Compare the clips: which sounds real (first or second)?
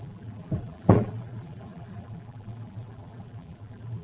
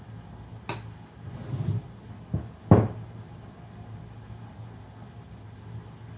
second